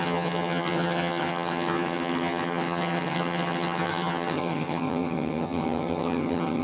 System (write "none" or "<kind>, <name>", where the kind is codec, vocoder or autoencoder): vocoder, HiFi-GAN